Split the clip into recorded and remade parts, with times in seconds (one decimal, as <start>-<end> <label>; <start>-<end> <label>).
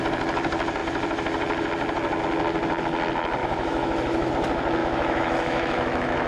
0.0-3.4 recorded; 3.4-4.3 remade; 4.3-4.8 recorded; 4.8-6.3 remade